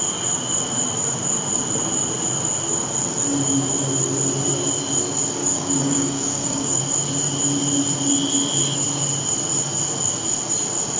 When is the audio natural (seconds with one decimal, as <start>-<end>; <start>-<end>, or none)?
0.0-5.4; 6.8-11.0